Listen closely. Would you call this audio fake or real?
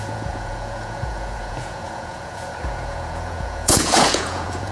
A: fake